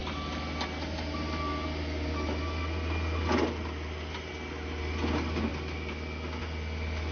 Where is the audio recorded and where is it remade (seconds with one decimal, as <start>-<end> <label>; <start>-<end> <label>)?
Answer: 0.0-7.1 recorded